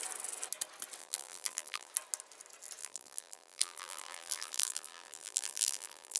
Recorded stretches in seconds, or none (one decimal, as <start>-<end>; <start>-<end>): 0.0-1.0; 1.9-2.8